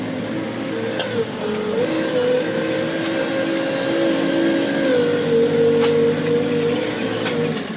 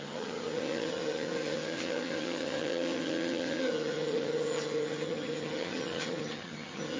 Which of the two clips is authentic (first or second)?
first